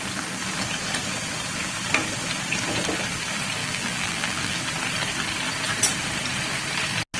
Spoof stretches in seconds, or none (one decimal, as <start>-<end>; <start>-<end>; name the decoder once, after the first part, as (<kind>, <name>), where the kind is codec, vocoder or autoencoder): 3.6-4.6 (vocoder, BigVGAN v2)